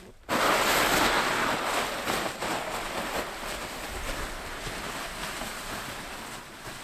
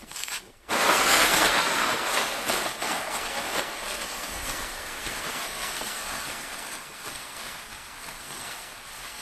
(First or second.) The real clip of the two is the first